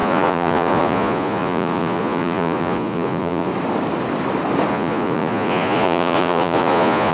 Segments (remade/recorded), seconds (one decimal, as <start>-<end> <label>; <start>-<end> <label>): 0.0-3.5 remade; 3.5-4.7 recorded; 4.7-7.1 remade